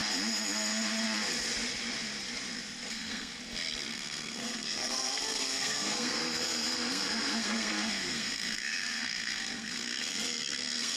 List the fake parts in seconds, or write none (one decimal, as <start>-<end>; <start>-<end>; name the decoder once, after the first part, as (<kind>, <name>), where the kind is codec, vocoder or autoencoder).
2.9-3.3 (codec, SNAC); 3.9-11.0